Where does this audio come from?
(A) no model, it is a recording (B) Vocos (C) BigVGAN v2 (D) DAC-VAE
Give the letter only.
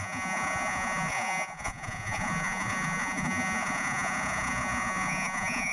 B